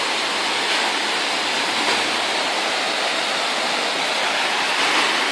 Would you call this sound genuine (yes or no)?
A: yes